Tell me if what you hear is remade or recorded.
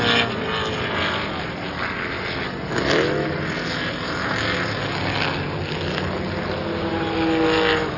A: recorded